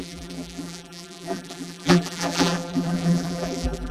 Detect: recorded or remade remade